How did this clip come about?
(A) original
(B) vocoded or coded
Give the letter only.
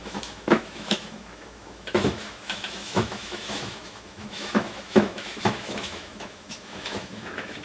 B